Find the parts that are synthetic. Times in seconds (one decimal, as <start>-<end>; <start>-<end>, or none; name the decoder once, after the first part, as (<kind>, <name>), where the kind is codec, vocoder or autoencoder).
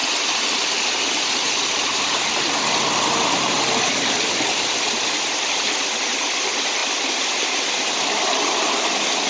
none